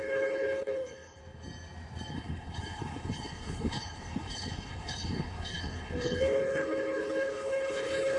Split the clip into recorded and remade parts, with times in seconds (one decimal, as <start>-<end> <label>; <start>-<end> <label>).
0.0-1.2 remade; 1.2-2.1 recorded; 2.1-8.2 remade